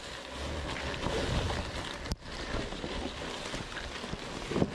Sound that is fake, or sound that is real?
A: real